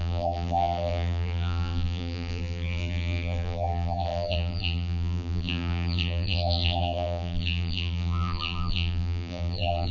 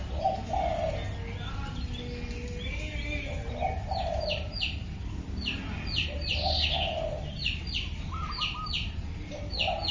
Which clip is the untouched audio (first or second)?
second